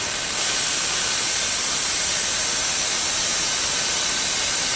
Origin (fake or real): real